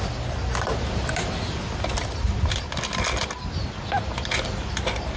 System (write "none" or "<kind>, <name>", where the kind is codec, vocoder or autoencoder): none